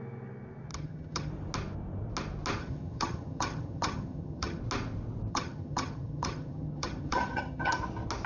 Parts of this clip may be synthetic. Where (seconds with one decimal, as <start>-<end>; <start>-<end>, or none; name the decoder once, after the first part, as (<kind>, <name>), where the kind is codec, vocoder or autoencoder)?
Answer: 0.7-1.3 (vocoder, HiFi-GAN); 2.6-4.6; 5.3-7.8